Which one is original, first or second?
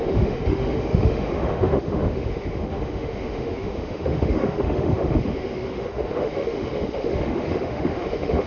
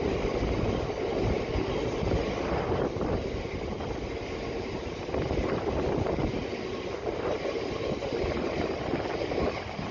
second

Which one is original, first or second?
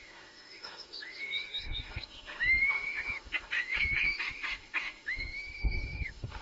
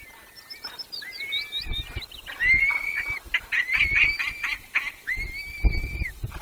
second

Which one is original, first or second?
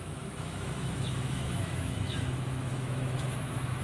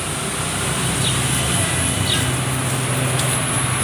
second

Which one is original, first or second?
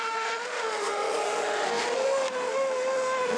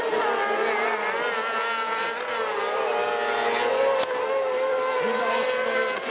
second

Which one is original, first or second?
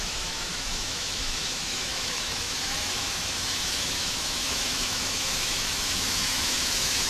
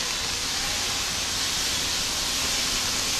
second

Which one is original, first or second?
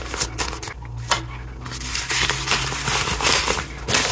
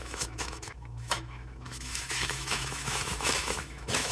first